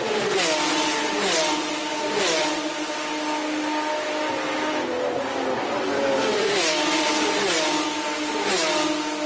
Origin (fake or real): real